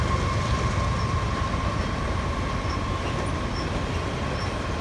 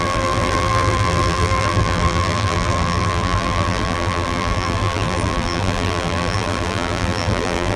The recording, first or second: first